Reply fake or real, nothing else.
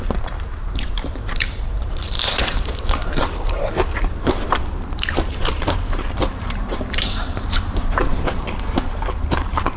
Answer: fake